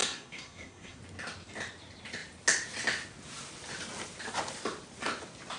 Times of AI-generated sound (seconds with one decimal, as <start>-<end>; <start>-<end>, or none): 0.0-1.0